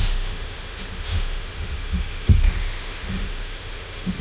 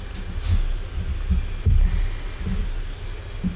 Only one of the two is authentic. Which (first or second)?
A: second